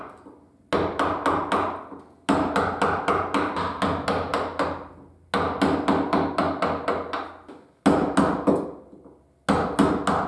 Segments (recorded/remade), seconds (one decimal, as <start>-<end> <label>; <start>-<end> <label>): 0.0-10.3 recorded